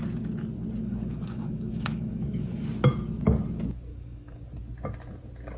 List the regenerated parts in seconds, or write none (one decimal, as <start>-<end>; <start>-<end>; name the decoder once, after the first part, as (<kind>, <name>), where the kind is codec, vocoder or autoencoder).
0.8-2.6 (codec, DAC); 3.9-4.4